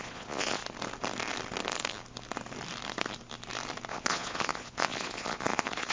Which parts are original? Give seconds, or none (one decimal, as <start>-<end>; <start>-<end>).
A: 0.6-3.9